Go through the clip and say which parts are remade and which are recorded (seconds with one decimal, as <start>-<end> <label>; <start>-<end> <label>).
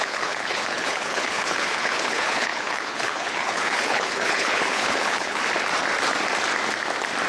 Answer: 0.0-5.4 remade; 5.4-7.3 recorded